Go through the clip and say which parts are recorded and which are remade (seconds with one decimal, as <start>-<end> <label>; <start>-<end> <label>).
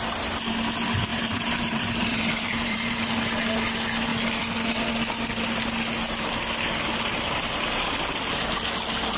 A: 0.0-1.1 recorded; 1.1-3.0 remade; 3.0-9.2 recorded